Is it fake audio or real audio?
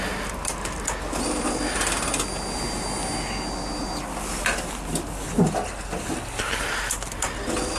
real